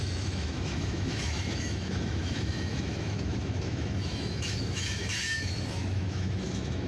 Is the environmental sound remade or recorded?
remade